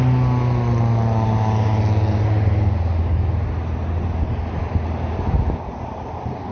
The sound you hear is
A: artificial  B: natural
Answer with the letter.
B